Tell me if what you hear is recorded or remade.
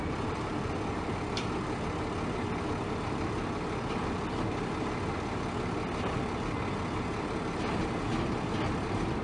recorded